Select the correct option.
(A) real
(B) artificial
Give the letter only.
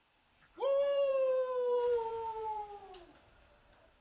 B